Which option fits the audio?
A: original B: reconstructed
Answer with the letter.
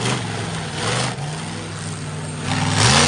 A